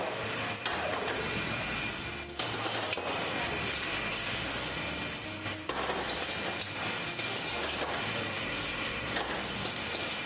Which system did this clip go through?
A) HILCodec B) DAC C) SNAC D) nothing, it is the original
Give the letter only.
D